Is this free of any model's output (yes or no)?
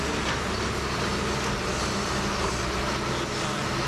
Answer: yes